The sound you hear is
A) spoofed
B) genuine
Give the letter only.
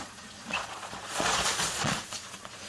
A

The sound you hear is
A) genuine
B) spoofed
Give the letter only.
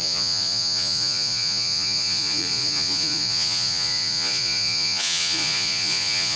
B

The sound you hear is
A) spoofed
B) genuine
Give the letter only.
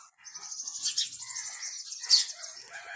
A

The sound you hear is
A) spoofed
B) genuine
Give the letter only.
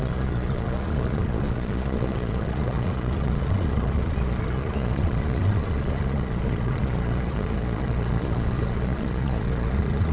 A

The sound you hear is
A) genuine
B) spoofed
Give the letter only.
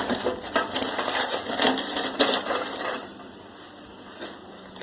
A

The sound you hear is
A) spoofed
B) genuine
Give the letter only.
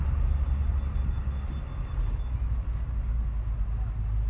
B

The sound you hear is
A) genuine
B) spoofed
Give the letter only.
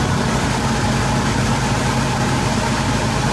A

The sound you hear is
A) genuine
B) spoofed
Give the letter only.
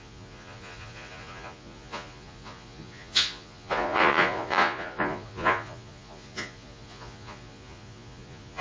B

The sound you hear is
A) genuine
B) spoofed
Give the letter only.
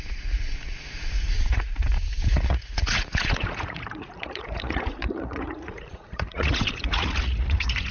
B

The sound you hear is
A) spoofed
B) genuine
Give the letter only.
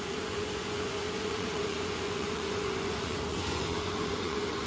A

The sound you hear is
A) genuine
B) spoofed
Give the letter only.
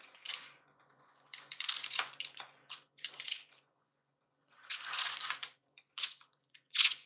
B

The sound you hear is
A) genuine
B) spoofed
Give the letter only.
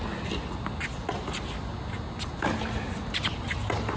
A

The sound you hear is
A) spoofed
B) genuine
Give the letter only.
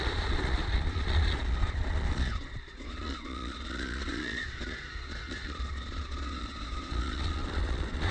A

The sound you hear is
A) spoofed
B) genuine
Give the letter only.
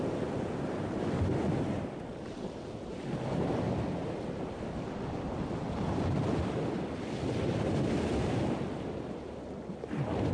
B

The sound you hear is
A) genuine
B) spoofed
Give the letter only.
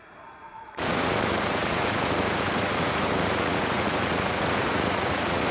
B